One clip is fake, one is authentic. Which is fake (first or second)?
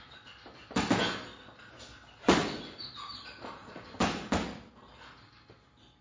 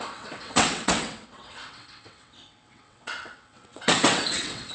second